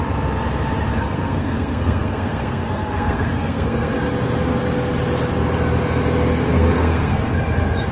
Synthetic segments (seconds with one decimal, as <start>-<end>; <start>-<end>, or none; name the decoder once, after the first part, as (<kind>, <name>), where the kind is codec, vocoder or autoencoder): 0.9-3.9 (codec, SNAC); 6.5-7.3